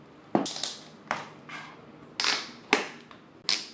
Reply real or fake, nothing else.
real